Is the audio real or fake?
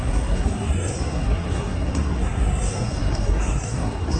fake